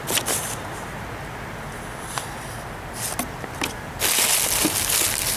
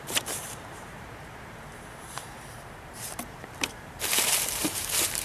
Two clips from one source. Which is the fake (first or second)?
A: second